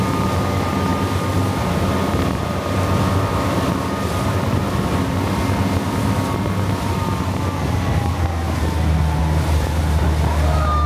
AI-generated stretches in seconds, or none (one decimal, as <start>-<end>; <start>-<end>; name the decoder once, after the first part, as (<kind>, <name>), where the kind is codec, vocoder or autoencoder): 9.2-9.8 (vocoder, BigVGAN v2)